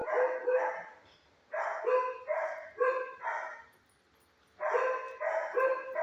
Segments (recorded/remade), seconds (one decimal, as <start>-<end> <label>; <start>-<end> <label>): 0.0-6.0 recorded